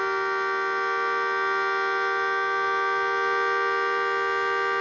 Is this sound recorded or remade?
recorded